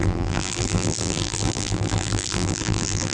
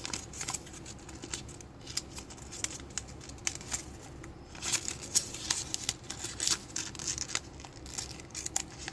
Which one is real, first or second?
second